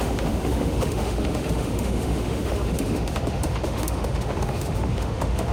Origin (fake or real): fake